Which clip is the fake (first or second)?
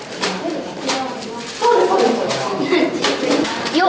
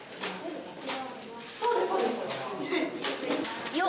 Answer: first